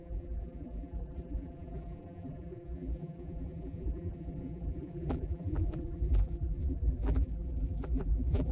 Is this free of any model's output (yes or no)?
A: no